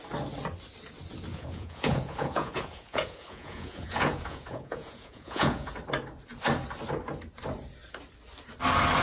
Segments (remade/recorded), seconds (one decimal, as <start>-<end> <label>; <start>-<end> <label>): 0.0-1.3 recorded; 1.3-5.7 remade; 5.7-9.0 recorded